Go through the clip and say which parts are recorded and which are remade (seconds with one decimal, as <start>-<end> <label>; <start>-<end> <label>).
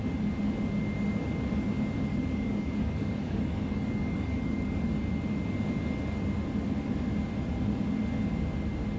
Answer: 0.0-2.1 recorded; 2.1-4.9 remade; 4.9-9.0 recorded